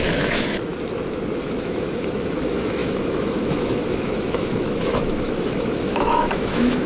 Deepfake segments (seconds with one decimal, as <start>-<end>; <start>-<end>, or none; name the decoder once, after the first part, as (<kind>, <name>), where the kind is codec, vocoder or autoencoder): 0.0-0.7 (autoencoder, DAC-VAE); 1.4-6.9

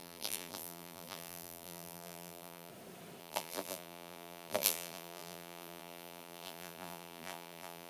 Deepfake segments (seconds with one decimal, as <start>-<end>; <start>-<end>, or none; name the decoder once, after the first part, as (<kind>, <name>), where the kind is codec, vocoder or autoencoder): 0.0-2.7 (vocoder, BigVGAN v2); 3.2-7.9